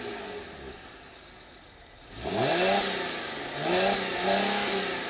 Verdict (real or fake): real